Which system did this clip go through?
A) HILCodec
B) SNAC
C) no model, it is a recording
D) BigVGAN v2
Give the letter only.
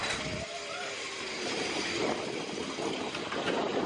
C